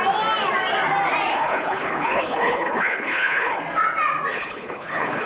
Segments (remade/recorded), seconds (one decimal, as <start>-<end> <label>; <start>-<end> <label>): 0.0-1.3 recorded; 1.3-3.6 remade; 3.6-4.3 recorded; 4.3-5.3 remade